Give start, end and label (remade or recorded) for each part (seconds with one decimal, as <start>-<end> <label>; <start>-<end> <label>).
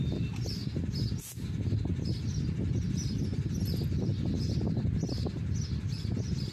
0.0-6.5 recorded